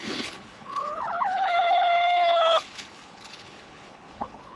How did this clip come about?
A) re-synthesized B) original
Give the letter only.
A